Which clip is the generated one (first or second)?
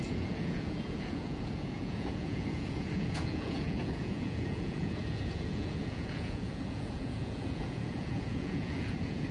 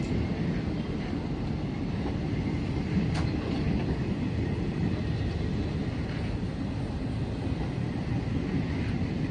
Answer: first